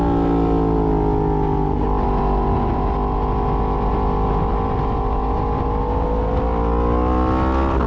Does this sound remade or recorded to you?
recorded